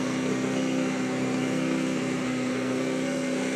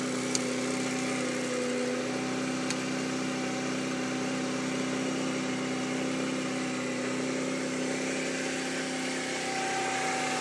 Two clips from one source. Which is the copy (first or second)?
first